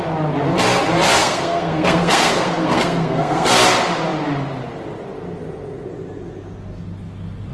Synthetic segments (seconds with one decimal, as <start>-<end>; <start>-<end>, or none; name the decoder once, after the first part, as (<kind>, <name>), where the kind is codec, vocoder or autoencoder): 1.2-3.5 (codec, SNAC)